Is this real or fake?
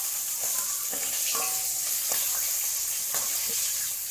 real